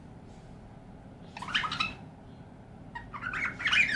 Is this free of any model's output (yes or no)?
yes